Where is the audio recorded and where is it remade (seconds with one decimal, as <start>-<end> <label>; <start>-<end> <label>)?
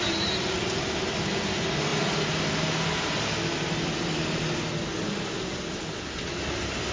0.0-6.9 recorded